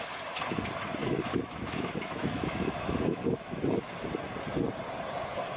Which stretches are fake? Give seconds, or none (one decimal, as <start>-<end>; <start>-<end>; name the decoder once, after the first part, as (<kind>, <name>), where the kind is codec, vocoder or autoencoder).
1.0-3.6 (autoencoder, DAC-VAE)